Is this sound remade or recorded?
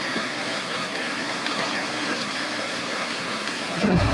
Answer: remade